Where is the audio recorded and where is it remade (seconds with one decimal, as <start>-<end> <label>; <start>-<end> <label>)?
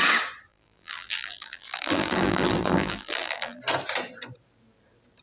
0.0-0.5 recorded; 0.5-3.6 remade; 3.6-5.2 recorded